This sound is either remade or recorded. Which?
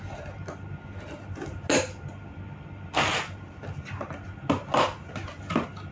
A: recorded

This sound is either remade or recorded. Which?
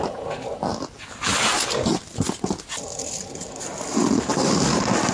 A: recorded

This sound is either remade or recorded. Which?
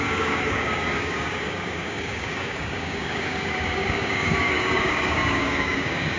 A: remade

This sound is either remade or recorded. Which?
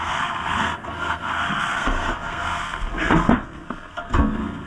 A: remade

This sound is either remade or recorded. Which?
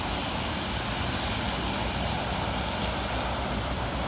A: recorded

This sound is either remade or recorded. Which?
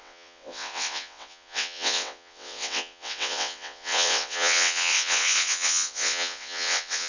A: remade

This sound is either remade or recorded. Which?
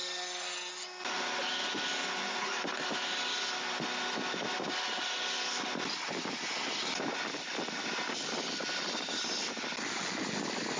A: recorded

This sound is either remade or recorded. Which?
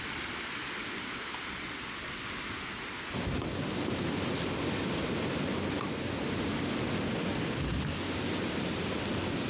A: recorded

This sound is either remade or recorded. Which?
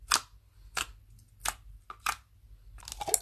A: recorded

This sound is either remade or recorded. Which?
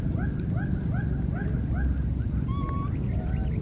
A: recorded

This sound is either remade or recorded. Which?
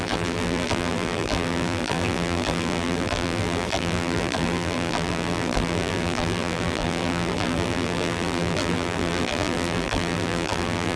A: remade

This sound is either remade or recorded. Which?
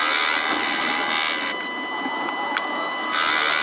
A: recorded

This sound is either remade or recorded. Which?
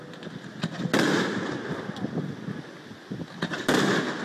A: recorded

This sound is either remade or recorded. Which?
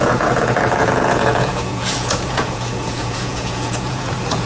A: remade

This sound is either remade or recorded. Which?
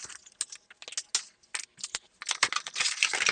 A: recorded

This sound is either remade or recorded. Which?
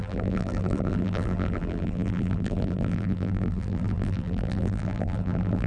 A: remade